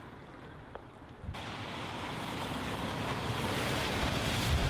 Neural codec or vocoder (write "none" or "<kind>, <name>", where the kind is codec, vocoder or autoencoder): vocoder, BigVGAN v2